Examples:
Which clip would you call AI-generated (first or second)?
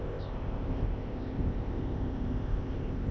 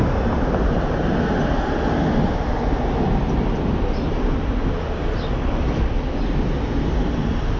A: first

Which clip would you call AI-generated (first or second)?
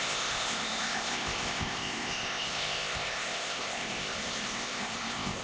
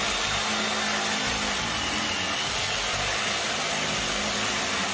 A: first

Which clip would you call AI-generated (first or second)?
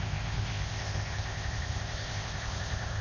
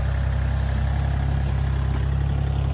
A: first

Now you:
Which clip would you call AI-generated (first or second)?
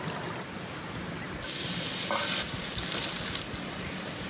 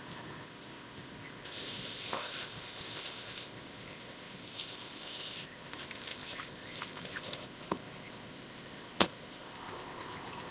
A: second